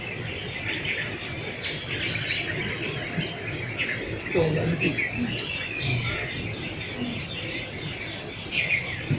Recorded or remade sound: recorded